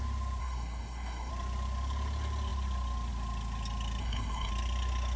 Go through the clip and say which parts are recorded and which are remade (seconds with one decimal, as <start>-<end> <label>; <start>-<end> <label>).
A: 0.0-0.4 recorded; 0.4-1.3 remade; 1.3-4.0 recorded; 4.0-4.5 remade; 4.5-5.2 recorded